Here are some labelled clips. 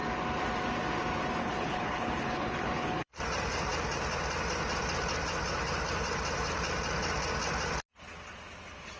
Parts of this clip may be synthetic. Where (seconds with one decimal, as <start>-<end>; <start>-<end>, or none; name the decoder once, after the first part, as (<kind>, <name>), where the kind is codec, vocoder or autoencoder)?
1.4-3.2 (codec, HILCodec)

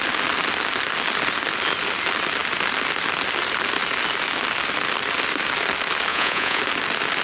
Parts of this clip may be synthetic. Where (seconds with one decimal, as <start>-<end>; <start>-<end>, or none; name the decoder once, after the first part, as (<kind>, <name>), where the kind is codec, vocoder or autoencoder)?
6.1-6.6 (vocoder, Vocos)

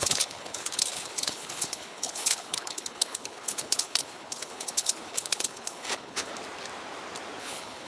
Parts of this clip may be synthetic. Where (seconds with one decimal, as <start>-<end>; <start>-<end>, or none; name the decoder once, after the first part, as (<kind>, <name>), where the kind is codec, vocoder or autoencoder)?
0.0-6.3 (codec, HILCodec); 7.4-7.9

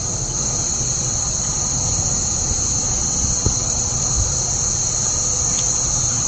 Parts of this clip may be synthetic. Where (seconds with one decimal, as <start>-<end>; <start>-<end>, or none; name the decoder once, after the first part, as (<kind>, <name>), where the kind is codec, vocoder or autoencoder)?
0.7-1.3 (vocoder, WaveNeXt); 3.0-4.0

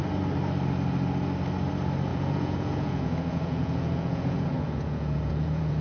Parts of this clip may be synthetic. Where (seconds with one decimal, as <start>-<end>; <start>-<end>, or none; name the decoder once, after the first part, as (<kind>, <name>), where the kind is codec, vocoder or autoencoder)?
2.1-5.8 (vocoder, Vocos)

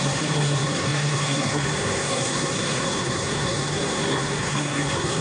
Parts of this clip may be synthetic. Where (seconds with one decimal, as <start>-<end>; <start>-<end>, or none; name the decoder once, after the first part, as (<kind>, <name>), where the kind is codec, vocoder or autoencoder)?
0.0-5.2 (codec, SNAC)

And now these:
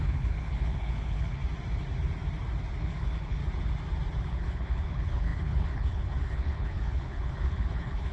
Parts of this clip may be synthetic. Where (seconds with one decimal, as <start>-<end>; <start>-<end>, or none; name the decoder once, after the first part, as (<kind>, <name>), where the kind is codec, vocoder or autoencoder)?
0.0-1.4 (codec, HILCodec); 2.8-3.4; 4.2-8.1

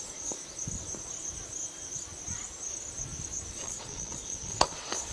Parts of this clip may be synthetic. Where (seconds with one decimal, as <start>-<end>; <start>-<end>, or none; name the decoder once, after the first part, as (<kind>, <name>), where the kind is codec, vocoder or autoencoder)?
0.0-0.4 (vocoder, Vocos); 3.5-5.1